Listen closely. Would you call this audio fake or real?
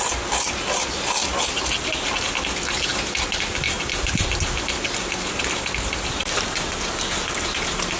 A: real